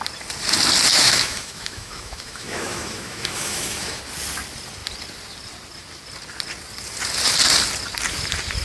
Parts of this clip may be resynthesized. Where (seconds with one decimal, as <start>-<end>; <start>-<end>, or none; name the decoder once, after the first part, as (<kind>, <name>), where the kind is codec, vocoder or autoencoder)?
0.9-4.0 (autoencoder, DAC-VAE)